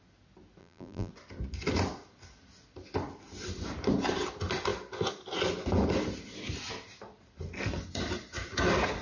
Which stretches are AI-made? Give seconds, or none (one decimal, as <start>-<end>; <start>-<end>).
0.6-1.1